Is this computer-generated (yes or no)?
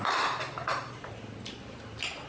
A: no